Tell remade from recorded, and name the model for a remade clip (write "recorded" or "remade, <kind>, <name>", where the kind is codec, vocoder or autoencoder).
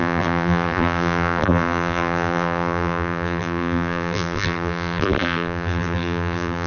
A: remade, vocoder, BigVGAN v2